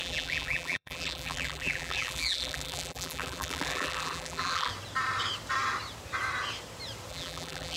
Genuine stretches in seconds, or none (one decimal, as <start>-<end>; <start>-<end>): 4.7-7.1